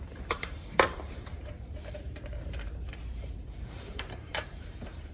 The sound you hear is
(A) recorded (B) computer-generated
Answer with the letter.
B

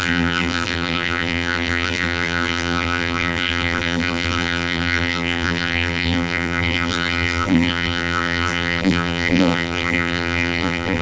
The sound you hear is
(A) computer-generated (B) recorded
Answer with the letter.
A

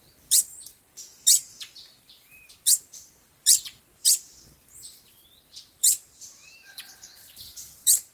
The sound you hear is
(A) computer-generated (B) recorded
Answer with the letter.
A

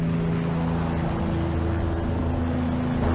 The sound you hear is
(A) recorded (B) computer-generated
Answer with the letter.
A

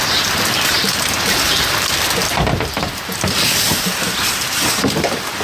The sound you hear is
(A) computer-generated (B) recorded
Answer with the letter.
A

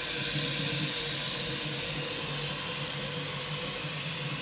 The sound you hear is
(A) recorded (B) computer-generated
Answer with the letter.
A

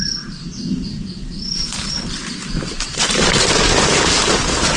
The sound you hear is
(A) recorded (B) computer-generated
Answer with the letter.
B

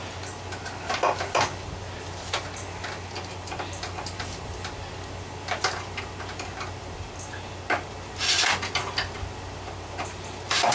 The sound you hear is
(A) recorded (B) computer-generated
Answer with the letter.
A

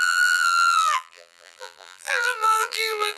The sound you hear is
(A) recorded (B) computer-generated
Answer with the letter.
B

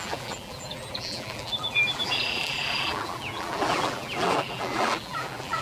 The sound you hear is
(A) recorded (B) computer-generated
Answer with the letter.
B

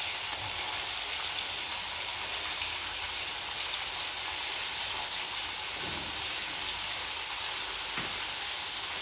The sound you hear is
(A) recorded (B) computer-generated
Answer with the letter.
A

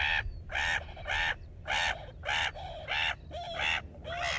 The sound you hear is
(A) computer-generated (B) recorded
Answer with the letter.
B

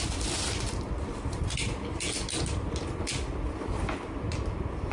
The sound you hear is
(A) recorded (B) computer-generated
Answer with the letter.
A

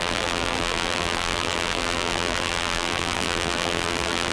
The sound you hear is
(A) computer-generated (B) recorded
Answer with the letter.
A